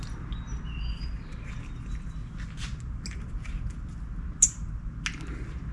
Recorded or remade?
recorded